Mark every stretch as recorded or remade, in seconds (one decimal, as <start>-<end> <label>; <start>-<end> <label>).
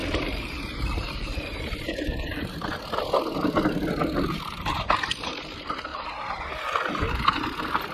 0.0-2.8 remade; 2.8-7.9 recorded